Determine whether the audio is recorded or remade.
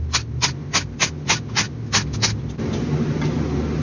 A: recorded